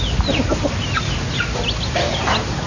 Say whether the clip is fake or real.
real